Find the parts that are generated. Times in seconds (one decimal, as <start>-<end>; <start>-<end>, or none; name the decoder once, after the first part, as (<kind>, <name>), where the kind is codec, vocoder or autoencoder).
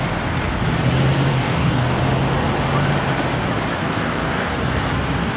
1.3-2.0 (codec, DAC); 3.8-4.5